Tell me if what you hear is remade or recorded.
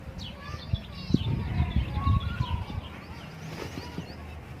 recorded